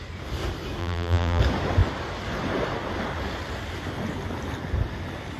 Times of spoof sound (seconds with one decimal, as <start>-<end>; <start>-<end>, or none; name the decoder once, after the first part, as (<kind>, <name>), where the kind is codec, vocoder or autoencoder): 0.8-1.4 (vocoder, BigVGAN v2)